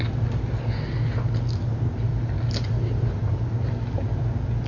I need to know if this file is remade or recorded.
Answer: recorded